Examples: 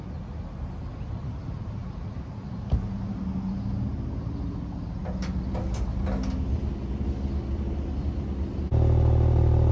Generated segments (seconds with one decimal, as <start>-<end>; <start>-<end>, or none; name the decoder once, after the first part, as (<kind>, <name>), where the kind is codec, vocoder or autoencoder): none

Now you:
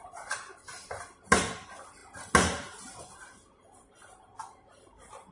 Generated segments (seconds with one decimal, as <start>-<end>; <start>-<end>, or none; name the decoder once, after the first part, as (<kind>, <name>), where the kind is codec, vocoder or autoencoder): none

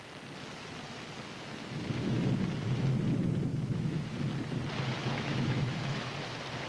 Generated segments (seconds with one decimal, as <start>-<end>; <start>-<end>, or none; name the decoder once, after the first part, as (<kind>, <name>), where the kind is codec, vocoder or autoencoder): 1.6-2.3 (autoencoder, DAC-VAE); 3.5-4.1; 5.0-6.1